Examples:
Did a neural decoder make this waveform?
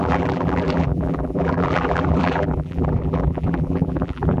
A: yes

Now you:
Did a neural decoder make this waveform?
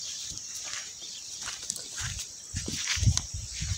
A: no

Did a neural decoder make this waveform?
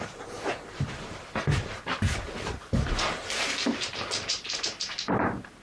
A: yes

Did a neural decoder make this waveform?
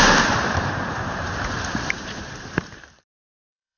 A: yes